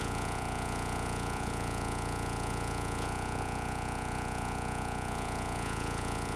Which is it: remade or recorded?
remade